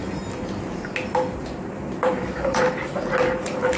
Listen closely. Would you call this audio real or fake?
real